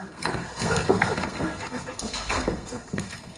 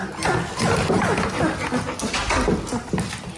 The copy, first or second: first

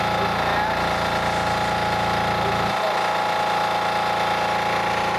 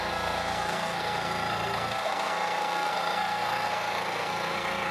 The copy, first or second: second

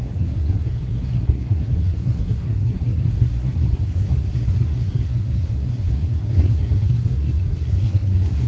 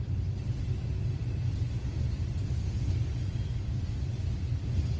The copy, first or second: first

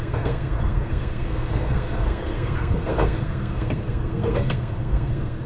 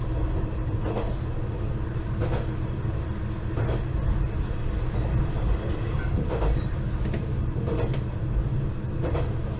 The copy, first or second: first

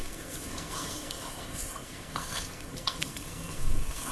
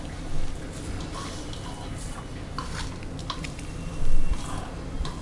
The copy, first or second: first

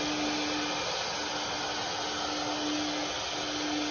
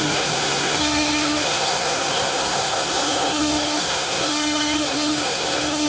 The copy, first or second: second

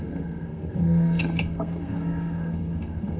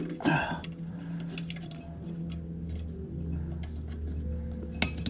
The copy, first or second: first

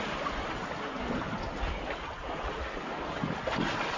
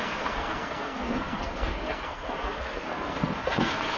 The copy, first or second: second